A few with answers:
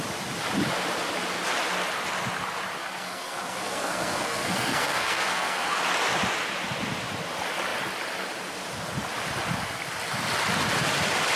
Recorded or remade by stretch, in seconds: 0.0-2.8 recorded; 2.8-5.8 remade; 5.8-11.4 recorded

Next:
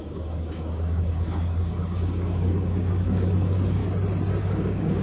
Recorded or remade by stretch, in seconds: 0.0-3.8 remade; 3.8-4.4 recorded; 4.4-5.0 remade

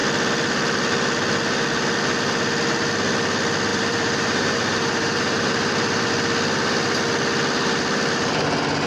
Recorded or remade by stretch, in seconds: 0.0-3.7 recorded; 3.7-6.1 remade; 6.1-8.9 recorded